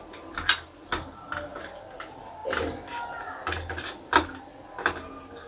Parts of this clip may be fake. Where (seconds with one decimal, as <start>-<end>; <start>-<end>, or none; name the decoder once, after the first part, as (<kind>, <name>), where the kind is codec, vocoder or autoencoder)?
none